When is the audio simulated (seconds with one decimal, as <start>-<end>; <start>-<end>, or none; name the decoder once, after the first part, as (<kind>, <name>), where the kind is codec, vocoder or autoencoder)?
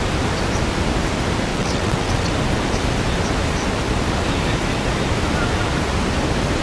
1.5-2.3 (vocoder, WaveNeXt)